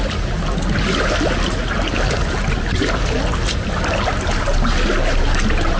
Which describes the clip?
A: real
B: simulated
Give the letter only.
A